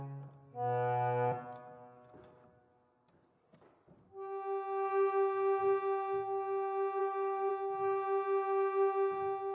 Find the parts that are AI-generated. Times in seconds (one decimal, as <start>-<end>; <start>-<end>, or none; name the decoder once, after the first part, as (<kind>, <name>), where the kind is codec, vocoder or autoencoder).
7.0-7.5 (codec, SNAC)